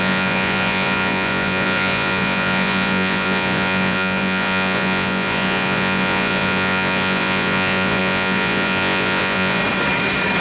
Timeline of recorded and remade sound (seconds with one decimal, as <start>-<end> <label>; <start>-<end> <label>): 0.0-9.6 remade; 9.6-10.4 recorded